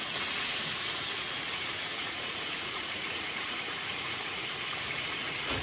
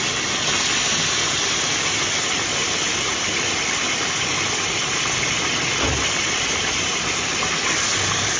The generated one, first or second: first